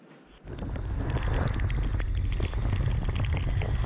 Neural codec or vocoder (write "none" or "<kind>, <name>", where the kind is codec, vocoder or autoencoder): none